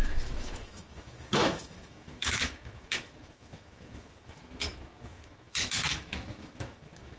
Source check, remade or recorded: remade